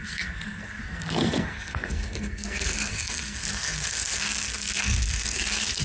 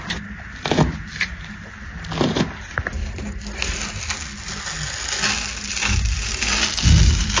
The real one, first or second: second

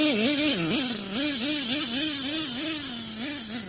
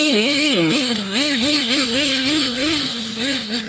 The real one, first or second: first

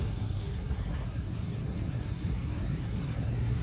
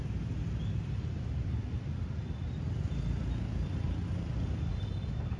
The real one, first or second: second